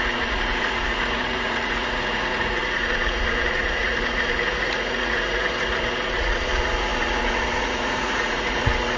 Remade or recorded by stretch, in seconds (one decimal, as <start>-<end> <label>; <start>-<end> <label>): 0.0-9.0 remade